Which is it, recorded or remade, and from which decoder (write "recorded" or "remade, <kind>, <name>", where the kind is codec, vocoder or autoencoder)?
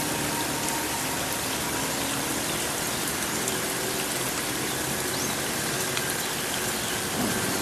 recorded